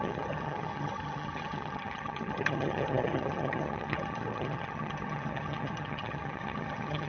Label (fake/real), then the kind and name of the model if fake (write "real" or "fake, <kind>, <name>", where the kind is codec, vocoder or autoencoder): fake, vocoder, HiFi-GAN